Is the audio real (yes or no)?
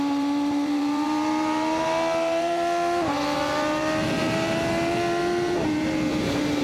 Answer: no